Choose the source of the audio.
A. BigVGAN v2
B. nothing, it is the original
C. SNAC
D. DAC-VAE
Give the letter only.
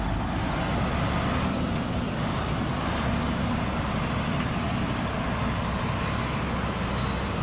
B